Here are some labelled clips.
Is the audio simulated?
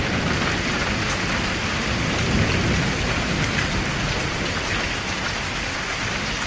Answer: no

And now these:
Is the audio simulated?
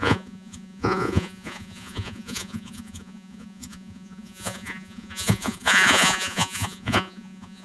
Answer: yes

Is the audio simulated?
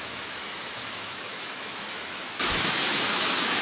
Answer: yes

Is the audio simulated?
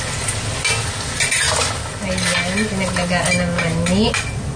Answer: no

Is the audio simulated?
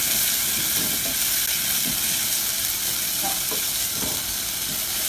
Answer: no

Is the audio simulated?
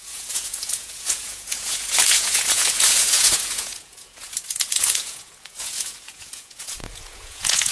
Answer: yes